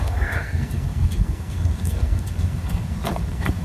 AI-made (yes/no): yes